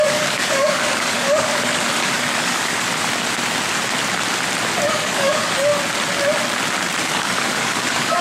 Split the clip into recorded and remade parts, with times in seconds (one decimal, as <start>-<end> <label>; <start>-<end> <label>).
0.0-3.0 remade; 3.0-4.8 recorded; 4.8-5.7 remade; 5.7-7.0 recorded; 7.0-8.2 remade